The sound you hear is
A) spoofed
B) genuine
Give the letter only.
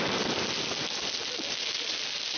B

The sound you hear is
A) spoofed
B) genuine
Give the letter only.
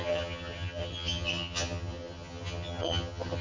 A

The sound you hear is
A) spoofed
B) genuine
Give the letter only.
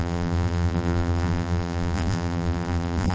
A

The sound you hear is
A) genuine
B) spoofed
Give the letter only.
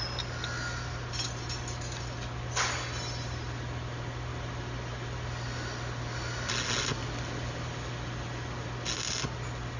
A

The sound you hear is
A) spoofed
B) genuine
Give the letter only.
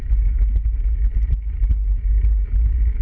B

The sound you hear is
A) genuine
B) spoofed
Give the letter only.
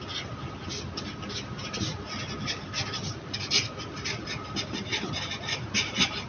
A